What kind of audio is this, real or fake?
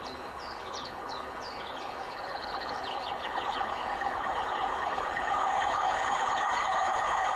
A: fake